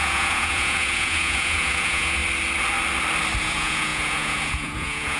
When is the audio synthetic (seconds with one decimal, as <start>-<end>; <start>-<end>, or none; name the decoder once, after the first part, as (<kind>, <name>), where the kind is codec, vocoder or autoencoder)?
0.0-2.2 (vocoder, Vocos); 3.4-5.2

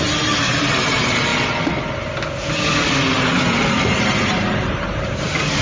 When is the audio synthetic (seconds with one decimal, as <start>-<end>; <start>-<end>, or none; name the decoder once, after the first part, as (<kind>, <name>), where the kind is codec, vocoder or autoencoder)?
0.0-1.3 (vocoder, BigVGAN v2); 3.6-5.6

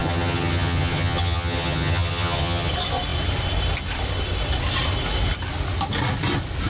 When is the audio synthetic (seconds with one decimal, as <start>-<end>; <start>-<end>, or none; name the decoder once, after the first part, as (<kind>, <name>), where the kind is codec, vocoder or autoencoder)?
0.0-2.7 (vocoder, HiFi-GAN)

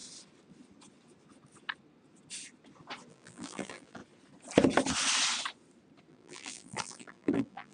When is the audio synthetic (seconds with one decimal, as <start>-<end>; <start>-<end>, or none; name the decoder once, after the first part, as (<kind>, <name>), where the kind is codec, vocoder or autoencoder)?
3.1-4.0 (vocoder, BigVGAN v2); 6.1-7.7

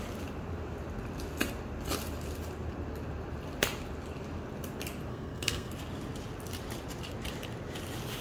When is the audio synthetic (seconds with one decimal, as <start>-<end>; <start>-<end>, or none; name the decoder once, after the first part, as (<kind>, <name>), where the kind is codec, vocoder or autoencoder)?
5.1-5.7 (codec, SNAC)